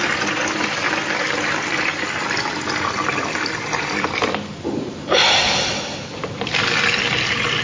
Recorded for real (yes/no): yes